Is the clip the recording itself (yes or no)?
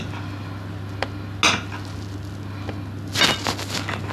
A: yes